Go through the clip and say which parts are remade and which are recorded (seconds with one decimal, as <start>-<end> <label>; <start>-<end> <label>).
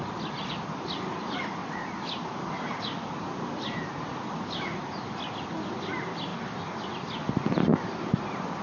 0.0-8.6 recorded